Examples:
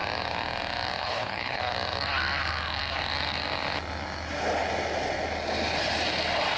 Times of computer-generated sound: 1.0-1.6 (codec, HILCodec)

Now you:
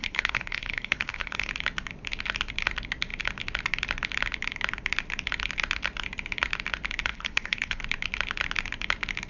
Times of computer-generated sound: 0.0-1.5 (codec, HILCodec); 7.1-7.8

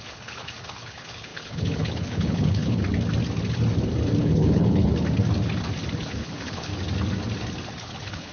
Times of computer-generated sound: 0.0-2.8 (codec, HILCodec); 4.2-4.9; 6.0-6.7; 7.8-8.3

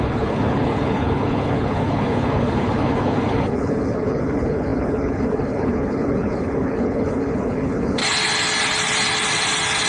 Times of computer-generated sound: 0.0-8.0 (codec, HILCodec)

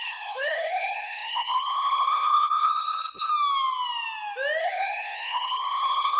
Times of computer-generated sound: 0.0-3.3 (codec, HILCodec); 4.6-6.2

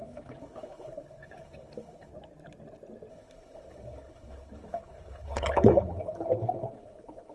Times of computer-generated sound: 0.0-2.1 (codec, HILCodec); 3.1-7.3

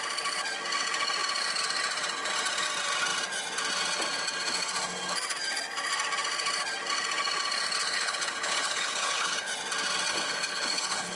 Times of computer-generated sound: 7.8-9.5 (codec, HILCodec); 10.1-11.2

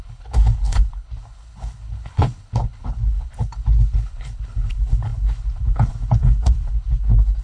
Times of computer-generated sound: 0.0-7.4 (codec, HILCodec)